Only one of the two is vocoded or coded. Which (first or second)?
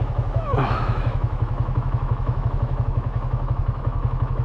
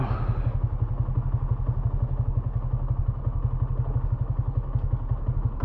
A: first